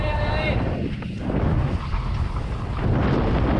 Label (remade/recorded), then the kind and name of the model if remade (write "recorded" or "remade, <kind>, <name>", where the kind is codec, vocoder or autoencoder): recorded